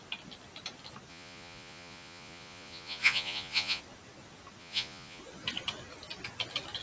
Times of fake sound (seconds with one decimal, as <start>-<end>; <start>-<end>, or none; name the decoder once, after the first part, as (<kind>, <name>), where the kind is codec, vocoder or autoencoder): 1.1-3.8 (vocoder, Vocos); 4.6-5.2